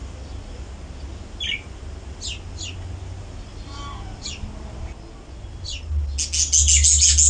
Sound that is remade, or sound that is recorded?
recorded